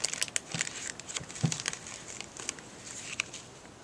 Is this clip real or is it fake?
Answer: real